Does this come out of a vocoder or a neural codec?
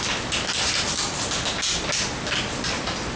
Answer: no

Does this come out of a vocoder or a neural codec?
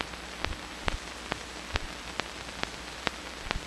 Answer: yes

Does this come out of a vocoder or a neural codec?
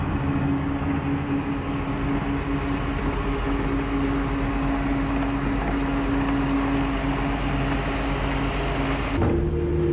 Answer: no